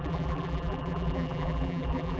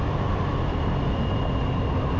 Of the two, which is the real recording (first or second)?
second